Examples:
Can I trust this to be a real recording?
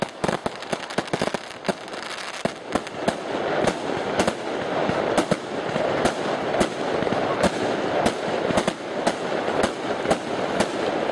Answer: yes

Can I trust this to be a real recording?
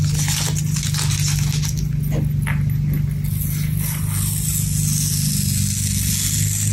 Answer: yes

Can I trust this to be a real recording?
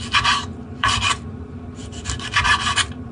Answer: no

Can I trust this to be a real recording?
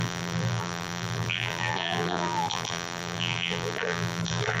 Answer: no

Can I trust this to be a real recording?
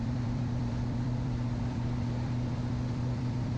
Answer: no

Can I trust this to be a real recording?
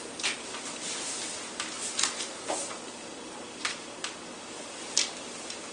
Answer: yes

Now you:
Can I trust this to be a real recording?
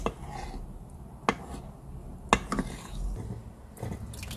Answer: yes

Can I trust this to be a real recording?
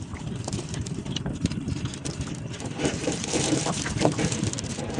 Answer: no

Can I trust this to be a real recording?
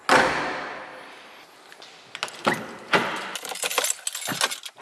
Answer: yes